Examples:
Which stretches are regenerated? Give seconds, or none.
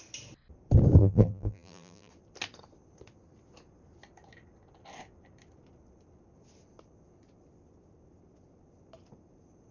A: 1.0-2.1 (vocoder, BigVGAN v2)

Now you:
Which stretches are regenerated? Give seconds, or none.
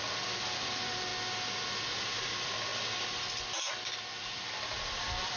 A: 0.0-1.1 (vocoder, BigVGAN v2); 2.2-2.7; 5.0-5.4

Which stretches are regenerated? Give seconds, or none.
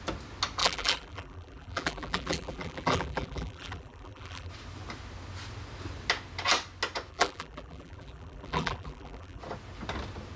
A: 0.6-4.5 (vocoder, BigVGAN v2); 7.1-9.4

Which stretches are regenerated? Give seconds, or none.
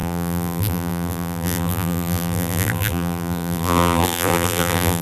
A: 0.0-5.0 (vocoder, BigVGAN v2)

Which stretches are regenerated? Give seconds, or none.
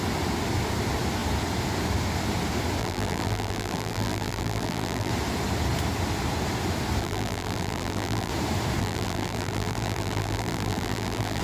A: 2.8-5.1 (vocoder, BigVGAN v2); 7.0-8.3; 8.8-11.4